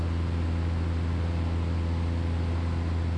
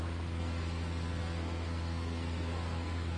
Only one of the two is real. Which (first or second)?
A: first